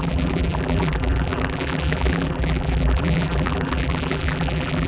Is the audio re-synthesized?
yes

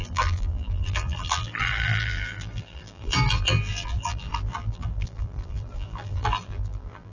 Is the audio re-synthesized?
yes